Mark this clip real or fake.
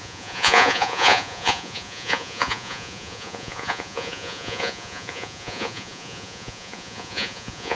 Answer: fake